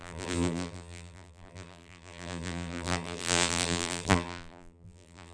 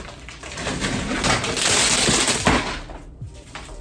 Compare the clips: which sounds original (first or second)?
second